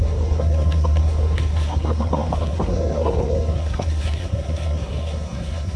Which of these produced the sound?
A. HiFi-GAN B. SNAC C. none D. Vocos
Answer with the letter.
B